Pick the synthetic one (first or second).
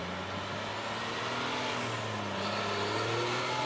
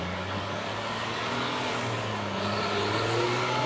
second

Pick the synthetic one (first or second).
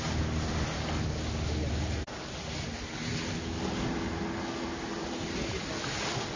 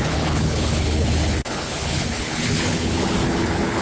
second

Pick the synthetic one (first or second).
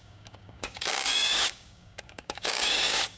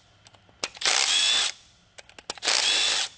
first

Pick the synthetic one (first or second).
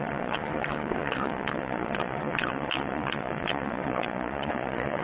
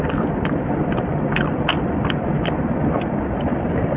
first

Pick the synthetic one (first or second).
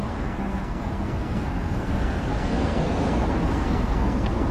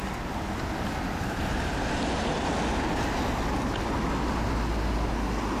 first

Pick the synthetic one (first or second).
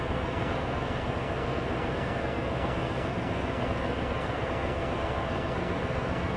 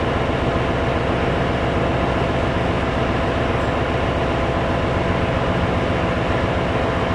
first